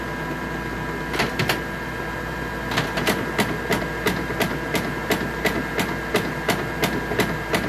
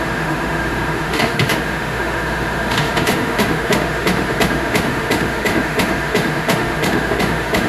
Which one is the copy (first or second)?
second